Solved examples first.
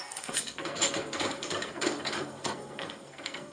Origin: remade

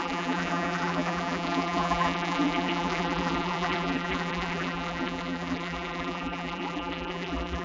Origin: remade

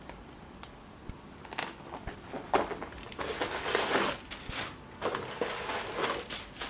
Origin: recorded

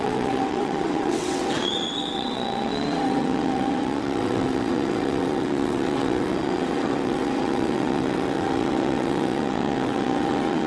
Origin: remade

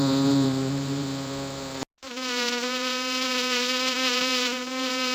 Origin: recorded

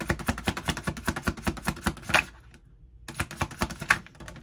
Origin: recorded